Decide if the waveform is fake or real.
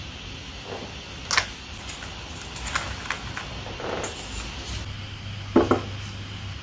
real